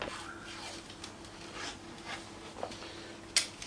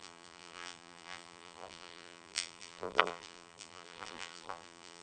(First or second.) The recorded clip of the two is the first